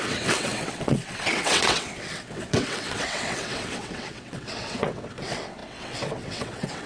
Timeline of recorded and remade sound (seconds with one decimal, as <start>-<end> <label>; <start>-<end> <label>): 0.0-6.9 remade